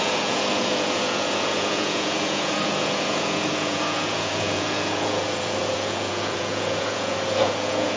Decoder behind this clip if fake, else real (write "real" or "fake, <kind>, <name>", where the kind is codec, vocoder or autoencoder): fake, vocoder, Vocos